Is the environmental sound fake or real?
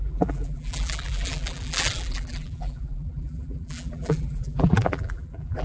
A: fake